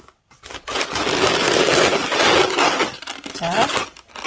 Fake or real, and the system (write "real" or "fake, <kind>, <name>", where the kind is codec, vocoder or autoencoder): real